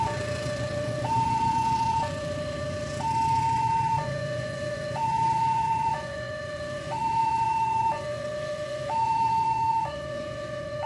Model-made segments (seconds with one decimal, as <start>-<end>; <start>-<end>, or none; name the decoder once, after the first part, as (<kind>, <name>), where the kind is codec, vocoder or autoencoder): 0.0-10.9 (vocoder, Vocos)